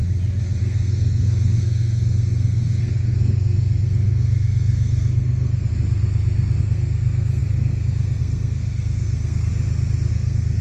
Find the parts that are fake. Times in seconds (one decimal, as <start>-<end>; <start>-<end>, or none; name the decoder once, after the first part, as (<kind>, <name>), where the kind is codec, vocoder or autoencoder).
0.6-5.7 (codec, SNAC); 6.6-9.5; 10.1-10.6